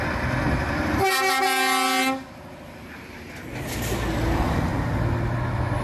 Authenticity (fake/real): real